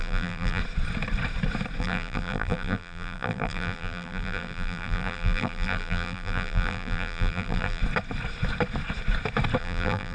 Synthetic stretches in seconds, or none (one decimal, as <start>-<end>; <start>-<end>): 0.0-0.6; 1.8-7.8; 9.6-10.1